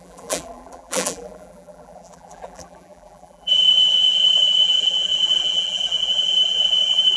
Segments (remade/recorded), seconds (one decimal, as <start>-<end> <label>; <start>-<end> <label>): 0.0-7.2 remade